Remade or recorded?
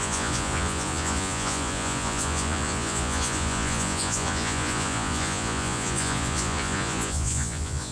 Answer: remade